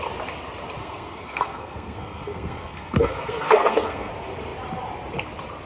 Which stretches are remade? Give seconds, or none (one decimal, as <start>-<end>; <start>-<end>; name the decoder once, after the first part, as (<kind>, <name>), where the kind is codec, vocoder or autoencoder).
0.8-4.1 (codec, SNAC)